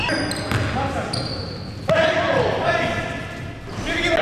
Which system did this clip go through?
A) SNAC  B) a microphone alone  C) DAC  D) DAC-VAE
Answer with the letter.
B